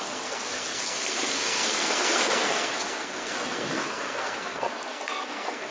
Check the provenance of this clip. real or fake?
fake